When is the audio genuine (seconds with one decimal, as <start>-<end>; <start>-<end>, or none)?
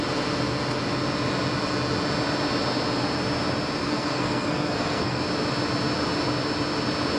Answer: 0.0-3.8; 5.2-7.2